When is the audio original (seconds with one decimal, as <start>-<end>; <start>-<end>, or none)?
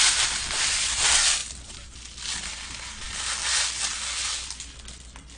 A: 0.0-5.4